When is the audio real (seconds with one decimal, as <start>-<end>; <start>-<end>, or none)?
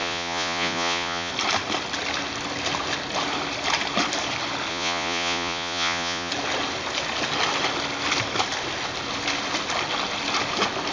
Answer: 1.3-4.7; 6.3-10.9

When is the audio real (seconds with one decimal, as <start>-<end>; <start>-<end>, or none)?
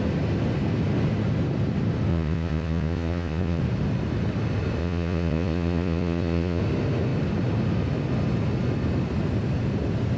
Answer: 0.0-2.1; 3.6-4.8; 6.6-10.2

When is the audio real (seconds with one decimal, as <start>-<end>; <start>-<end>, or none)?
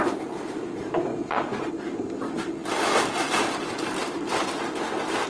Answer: 0.0-1.1; 1.7-5.3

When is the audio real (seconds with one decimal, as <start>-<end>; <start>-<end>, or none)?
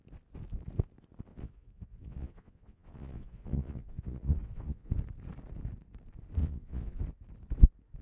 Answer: 0.0-1.3; 4.9-6.4; 7.0-8.0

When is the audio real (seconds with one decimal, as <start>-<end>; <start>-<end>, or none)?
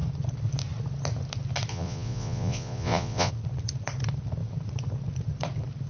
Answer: 0.0-1.7; 3.3-5.9